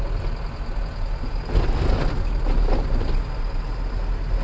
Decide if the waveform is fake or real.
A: real